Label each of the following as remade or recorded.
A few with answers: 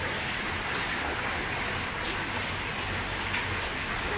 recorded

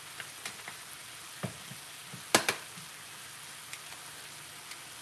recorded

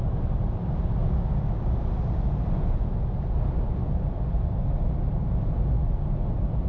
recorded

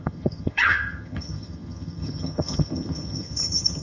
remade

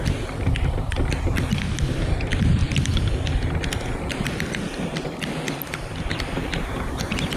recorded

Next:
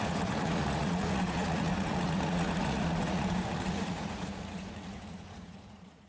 remade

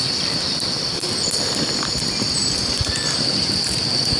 recorded